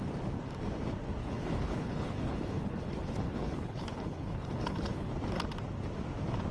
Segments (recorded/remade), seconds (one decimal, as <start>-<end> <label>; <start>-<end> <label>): 0.0-1.2 recorded; 1.2-5.1 remade; 5.1-6.5 recorded